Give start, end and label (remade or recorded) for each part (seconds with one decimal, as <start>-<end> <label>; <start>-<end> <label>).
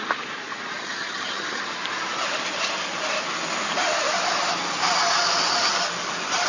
0.0-0.8 recorded; 0.8-1.6 remade; 1.6-6.5 recorded